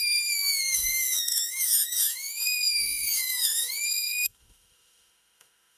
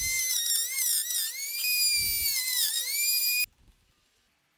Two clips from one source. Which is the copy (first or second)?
first